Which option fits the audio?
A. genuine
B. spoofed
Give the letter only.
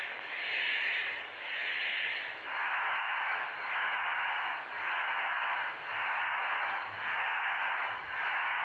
B